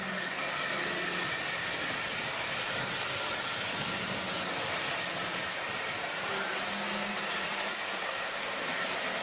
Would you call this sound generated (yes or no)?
no